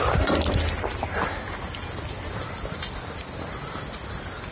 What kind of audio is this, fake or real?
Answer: real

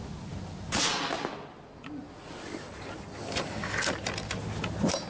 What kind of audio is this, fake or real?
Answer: real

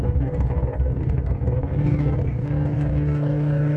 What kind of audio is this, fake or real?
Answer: fake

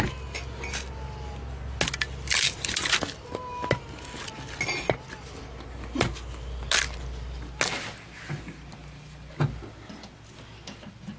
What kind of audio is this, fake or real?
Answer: real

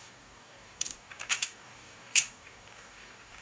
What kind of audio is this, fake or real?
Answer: fake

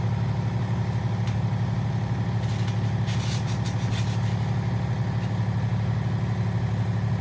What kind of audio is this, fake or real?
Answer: real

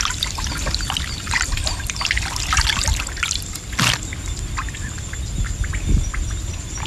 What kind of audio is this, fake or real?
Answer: real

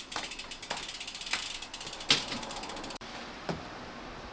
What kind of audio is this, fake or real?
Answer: real